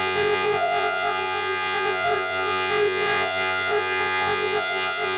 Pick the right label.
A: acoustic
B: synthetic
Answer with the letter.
B